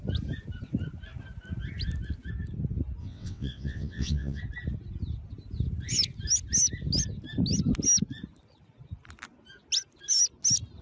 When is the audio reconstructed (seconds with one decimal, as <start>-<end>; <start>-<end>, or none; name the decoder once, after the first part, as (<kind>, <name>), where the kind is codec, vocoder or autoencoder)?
3.0-4.4 (vocoder, WaveNeXt)